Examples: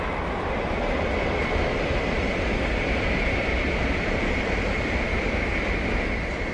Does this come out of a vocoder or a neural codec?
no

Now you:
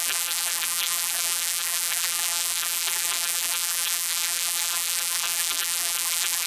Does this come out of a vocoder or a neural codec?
yes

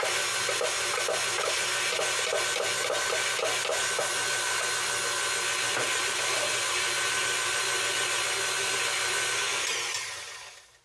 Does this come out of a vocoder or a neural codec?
no